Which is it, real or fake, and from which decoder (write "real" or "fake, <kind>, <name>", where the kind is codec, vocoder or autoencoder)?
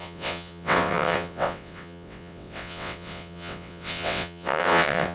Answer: fake, vocoder, WaveNeXt